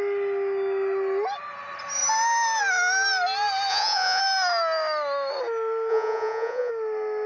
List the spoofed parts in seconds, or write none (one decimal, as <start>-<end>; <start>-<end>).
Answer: 3.7-4.2; 5.9-6.7